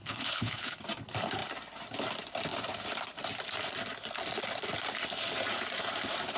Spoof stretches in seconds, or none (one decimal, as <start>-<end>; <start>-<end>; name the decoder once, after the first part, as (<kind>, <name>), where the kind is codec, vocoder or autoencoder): 0.0-0.8 (codec, HILCodec)